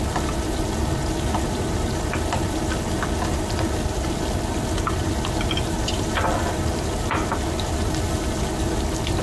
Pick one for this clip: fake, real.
real